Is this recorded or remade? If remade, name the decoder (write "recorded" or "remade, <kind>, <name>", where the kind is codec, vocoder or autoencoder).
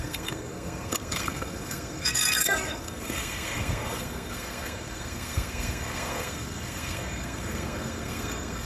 remade, codec, SNAC